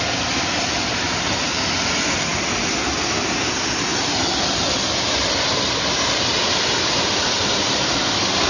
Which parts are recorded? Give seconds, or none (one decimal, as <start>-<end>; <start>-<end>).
0.0-8.5